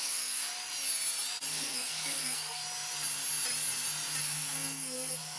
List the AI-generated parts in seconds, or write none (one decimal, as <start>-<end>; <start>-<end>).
0.0-0.5; 1.5-2.6; 4.2-5.4